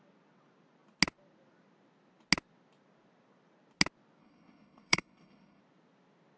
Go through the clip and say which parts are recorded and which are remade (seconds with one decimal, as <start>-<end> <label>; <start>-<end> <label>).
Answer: 0.0-4.2 recorded; 4.2-5.6 remade; 5.6-6.4 recorded